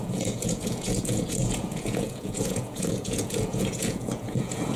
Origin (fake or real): fake